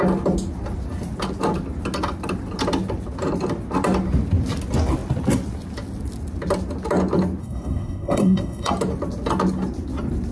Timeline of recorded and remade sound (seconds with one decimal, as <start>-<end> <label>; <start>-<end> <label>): 0.0-7.4 recorded; 7.4-8.7 remade; 8.7-10.3 recorded